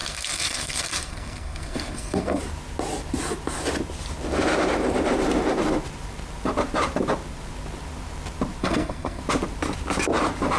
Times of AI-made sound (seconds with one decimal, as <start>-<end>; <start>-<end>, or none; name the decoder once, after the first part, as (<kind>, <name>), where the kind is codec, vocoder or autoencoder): 0.0-2.4 (codec, SNAC); 8.6-9.2